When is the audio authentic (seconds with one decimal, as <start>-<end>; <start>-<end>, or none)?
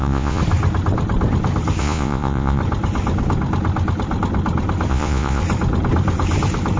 0.4-1.8; 2.6-4.9; 5.4-6.8